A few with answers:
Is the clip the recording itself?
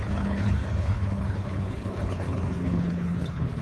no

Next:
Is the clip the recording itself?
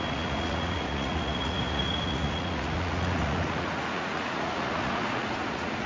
no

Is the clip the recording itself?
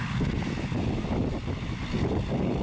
yes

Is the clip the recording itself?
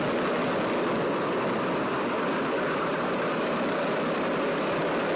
yes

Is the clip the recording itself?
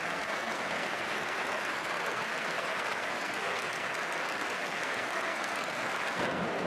no